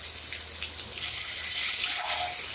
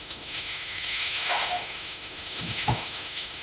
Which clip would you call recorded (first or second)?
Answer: first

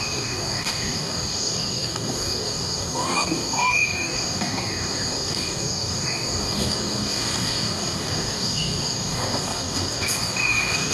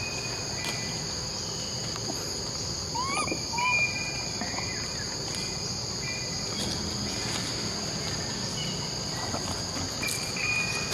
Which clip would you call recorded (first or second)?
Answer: second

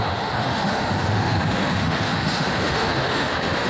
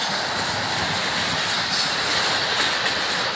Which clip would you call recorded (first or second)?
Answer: second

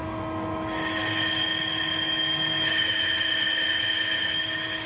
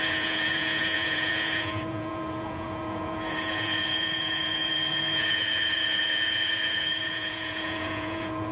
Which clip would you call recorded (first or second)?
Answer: first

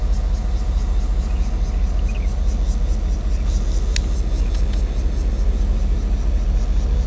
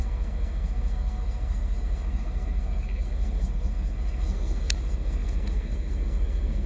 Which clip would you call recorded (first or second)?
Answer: first